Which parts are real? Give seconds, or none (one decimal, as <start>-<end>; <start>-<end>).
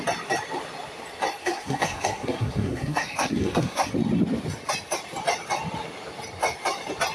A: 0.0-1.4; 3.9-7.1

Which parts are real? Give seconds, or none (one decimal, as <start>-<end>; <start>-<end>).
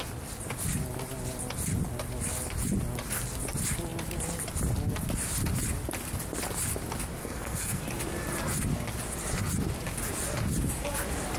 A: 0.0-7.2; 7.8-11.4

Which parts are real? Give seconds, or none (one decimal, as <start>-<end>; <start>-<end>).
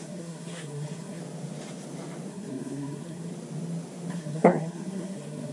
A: 1.2-2.3; 3.3-4.1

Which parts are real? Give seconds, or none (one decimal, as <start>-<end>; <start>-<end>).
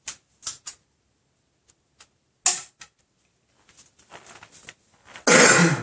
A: 0.0-5.8